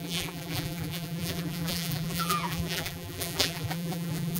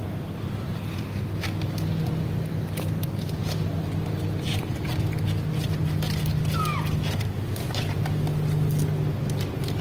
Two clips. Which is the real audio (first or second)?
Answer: second